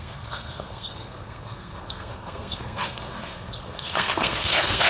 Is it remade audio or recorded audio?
remade